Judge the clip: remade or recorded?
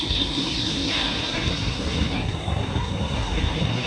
remade